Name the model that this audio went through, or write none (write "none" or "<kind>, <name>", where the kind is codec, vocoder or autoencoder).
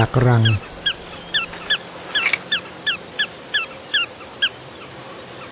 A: none